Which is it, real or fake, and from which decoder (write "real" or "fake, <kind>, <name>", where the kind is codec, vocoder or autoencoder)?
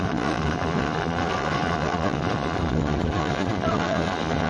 fake, vocoder, Vocos